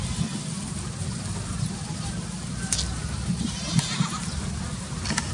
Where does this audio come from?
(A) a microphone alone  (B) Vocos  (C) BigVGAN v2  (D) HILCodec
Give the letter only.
A